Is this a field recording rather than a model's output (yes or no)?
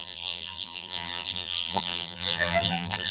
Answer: no